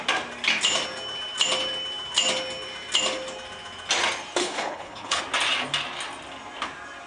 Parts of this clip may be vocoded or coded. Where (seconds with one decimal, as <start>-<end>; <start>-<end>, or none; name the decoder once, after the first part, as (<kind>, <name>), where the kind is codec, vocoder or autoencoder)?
4.4-5.2 (codec, HILCodec)

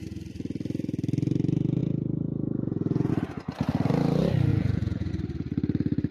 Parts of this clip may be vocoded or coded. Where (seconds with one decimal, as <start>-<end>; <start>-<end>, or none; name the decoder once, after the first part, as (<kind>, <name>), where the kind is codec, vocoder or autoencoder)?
1.8-3.1 (vocoder, Vocos); 4.5-5.1

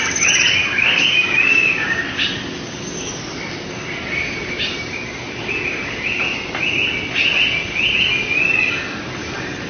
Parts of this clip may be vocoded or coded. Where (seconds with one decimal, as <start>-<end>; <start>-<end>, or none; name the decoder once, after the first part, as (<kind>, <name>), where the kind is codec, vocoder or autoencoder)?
0.8-2.0 (codec, DAC)

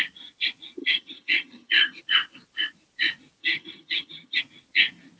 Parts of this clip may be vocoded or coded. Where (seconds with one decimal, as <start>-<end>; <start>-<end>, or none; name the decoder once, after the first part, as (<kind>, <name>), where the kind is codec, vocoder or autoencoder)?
0.8-2.0 (vocoder, HiFi-GAN); 3.4-4.4

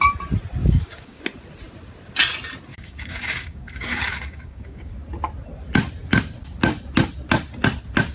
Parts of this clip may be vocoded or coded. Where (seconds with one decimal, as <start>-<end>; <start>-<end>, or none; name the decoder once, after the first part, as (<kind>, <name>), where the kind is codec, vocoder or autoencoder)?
0.6-1.2 (codec, DAC); 2.7-4.9

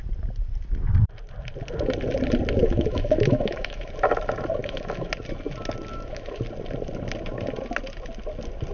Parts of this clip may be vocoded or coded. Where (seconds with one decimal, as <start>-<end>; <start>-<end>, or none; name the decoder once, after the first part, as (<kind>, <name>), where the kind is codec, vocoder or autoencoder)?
2.6-3.9 (autoencoder, DAC-VAE); 4.6-5.1; 5.9-6.4